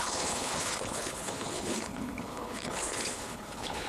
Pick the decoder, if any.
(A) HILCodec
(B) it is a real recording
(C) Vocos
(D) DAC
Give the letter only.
A